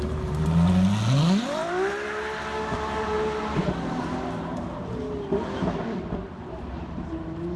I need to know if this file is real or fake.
real